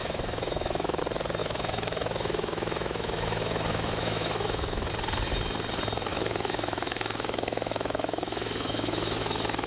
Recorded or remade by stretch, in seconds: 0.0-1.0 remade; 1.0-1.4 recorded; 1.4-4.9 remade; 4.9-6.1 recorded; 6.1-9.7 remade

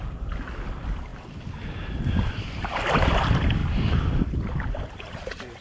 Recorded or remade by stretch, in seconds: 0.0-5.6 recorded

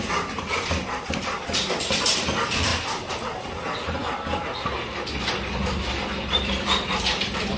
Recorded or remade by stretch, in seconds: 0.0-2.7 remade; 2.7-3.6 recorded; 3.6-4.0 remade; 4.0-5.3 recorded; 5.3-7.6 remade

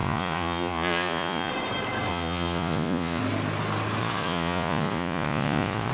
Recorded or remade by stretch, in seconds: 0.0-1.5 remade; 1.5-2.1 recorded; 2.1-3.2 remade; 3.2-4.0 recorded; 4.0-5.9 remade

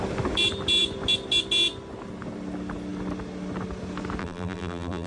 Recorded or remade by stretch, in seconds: 0.0-4.2 recorded; 4.2-5.1 remade

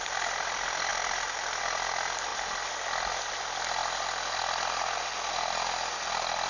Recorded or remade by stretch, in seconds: 0.0-6.5 recorded

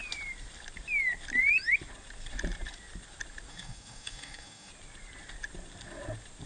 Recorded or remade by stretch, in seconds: 0.0-3.5 recorded; 3.5-4.7 remade; 4.7-6.5 recorded

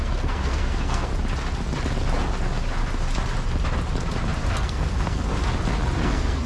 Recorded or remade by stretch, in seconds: 0.0-1.1 remade; 1.1-4.5 recorded; 4.5-5.3 remade; 5.3-6.0 recorded; 6.0-6.5 remade